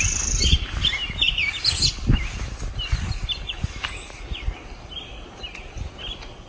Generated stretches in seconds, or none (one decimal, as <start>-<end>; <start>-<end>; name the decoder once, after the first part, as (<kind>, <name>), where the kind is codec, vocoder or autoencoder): none